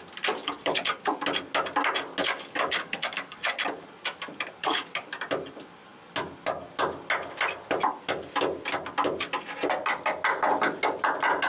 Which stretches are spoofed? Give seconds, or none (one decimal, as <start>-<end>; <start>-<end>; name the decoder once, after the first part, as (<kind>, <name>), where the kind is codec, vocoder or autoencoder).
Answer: 0.4-1.2 (codec, DAC); 2.2-3.6; 4.6-5.1